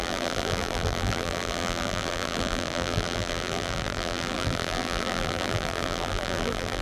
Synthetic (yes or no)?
yes